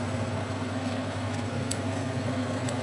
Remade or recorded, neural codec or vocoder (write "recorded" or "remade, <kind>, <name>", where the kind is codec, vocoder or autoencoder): remade, codec, SNAC